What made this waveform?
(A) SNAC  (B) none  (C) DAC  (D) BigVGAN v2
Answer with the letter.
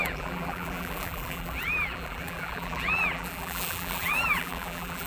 D